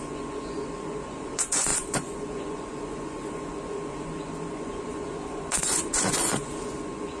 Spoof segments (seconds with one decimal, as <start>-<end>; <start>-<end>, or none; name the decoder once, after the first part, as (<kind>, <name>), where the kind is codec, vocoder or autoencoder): 0.0-7.2 (vocoder, Vocos)